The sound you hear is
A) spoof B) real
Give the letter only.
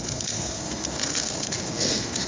A